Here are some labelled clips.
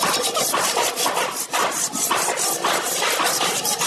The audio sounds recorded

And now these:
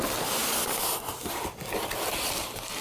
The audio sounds recorded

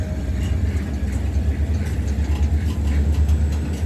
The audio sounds recorded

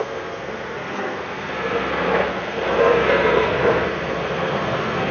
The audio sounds remade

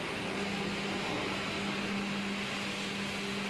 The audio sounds recorded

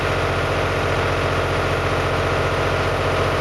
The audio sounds recorded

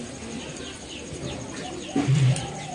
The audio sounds recorded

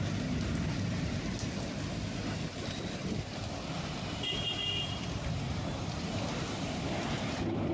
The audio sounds recorded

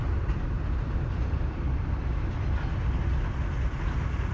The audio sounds recorded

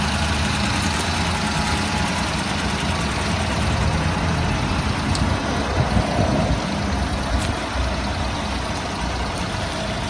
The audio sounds recorded